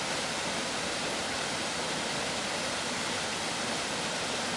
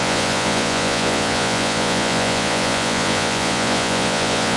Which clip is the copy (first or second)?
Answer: second